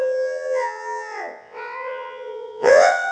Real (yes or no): no